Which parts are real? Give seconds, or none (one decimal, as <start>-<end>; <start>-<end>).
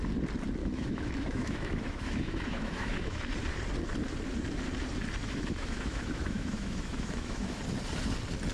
0.0-0.6; 3.2-5.2; 7.6-8.5